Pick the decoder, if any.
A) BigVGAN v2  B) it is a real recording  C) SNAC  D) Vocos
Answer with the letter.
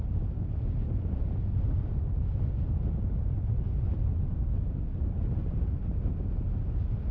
B